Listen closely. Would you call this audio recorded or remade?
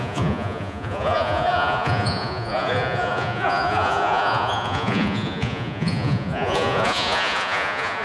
remade